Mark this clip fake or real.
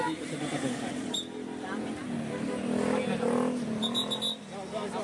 real